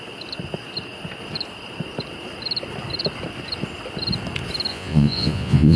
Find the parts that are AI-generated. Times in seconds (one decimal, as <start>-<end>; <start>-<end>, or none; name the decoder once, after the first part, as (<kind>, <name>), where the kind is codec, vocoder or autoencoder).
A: 4.7-5.8 (vocoder, Vocos)